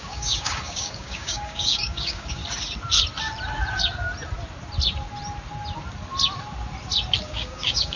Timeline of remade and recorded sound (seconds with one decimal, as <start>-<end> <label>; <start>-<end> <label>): 0.0-2.4 remade; 2.4-7.2 recorded; 7.2-8.0 remade